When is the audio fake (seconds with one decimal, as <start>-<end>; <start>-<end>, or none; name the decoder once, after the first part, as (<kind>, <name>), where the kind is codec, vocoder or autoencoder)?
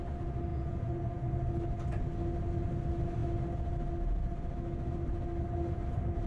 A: 0.5-1.3 (vocoder, Vocos)